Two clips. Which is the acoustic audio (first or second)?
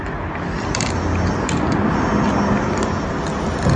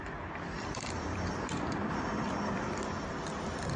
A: first